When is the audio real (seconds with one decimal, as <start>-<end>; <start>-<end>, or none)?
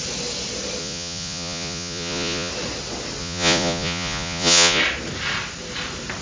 0.0-0.8; 2.5-3.2; 4.8-6.2